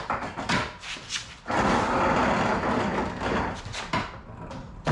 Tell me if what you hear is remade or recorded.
recorded